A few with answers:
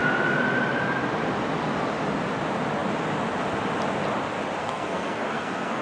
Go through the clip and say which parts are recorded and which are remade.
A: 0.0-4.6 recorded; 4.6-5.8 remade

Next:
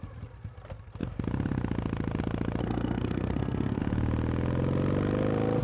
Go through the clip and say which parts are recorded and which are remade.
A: 0.0-2.6 recorded; 2.6-3.8 remade; 3.8-5.6 recorded

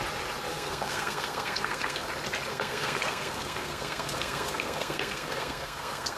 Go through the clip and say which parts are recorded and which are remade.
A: 0.0-0.5 recorded; 0.5-2.1 remade; 2.1-2.5 recorded; 2.5-6.2 remade

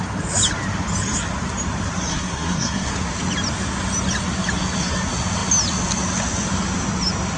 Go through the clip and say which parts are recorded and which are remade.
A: 0.0-2.1 recorded; 2.1-2.9 remade; 2.9-7.4 recorded

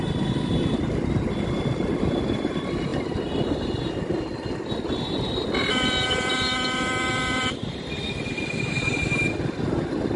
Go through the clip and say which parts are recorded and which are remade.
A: 0.0-10.2 recorded

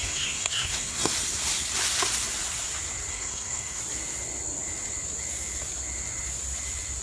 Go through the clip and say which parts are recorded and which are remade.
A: 0.0-1.1 remade; 1.1-3.1 recorded; 3.1-3.8 remade; 3.8-7.0 recorded

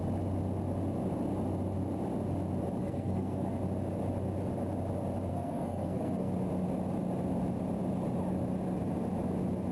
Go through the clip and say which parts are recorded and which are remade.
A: 0.0-2.8 recorded; 2.8-3.5 remade; 3.5-5.3 recorded; 5.3-6.3 remade; 6.3-9.7 recorded